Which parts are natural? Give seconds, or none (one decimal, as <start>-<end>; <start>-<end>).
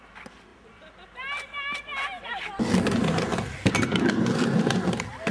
0.0-5.3